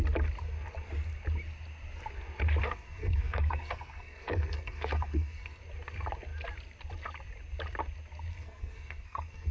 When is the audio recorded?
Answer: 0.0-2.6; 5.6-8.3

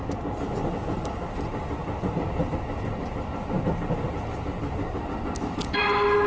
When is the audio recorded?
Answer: 0.0-6.3